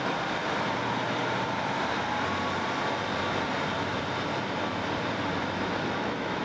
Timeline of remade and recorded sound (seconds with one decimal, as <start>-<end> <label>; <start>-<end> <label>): 0.0-5.4 recorded; 5.4-6.4 remade